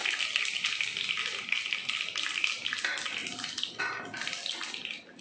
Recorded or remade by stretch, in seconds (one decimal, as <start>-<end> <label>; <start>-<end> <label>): 0.0-5.2 recorded